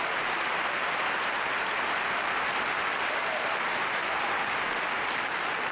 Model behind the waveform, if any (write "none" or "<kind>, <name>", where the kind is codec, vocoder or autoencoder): none